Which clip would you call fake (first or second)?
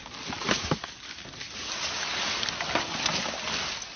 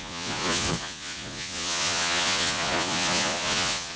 second